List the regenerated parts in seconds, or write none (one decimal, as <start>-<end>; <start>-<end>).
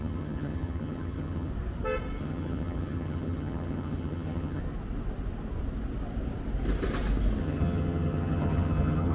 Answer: 0.0-1.5; 2.2-4.6; 7.4-9.1